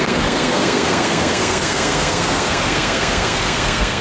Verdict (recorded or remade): remade